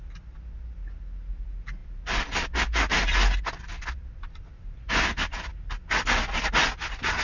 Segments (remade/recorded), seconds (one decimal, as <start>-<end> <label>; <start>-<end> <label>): 0.0-7.2 recorded